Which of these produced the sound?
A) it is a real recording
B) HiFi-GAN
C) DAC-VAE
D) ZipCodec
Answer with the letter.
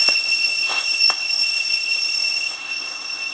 D